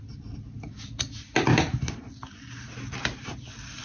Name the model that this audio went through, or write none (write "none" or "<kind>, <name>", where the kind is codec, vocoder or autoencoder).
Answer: none